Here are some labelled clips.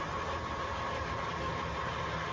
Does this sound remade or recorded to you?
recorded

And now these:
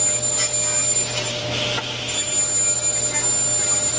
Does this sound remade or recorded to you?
recorded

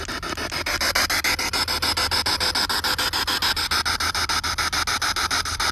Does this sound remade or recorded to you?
recorded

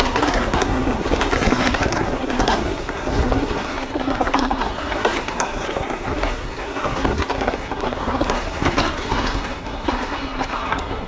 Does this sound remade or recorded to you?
remade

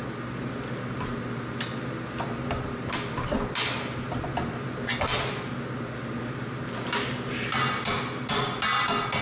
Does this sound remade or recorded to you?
recorded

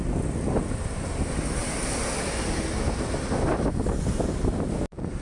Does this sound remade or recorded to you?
recorded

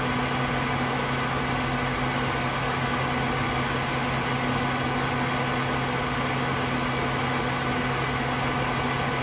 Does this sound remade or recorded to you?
recorded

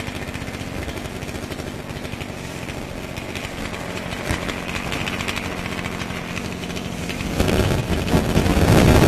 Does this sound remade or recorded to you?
recorded